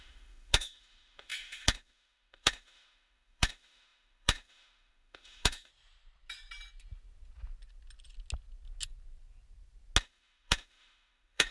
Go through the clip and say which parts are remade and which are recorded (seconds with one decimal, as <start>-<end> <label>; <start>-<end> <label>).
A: 0.0-5.7 remade; 5.7-10.0 recorded; 10.0-11.5 remade